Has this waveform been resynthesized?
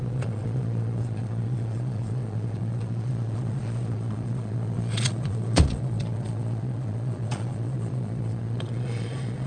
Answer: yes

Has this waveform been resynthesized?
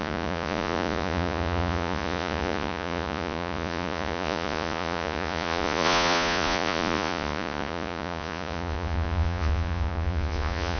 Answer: yes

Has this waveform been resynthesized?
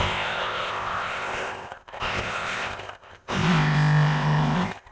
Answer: yes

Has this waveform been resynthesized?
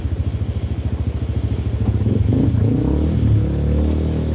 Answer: no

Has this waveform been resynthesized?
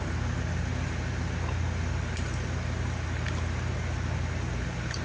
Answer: no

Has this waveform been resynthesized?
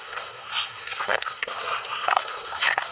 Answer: yes